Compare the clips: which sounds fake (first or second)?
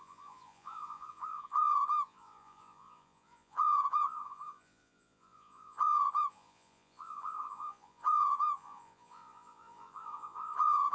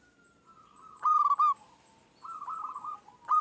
first